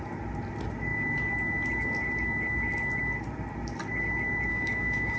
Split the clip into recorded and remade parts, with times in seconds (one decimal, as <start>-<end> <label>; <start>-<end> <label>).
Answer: 0.0-4.5 recorded; 4.5-5.2 remade